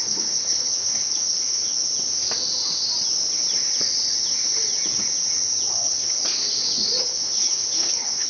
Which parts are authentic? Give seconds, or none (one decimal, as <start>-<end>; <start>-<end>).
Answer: 1.8-5.7; 6.2-7.0